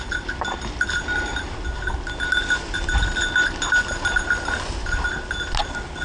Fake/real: real